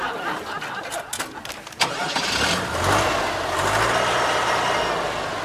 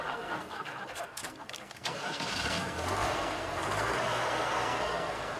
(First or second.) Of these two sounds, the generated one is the second